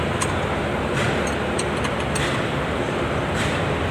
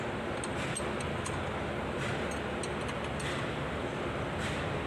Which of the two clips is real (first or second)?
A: second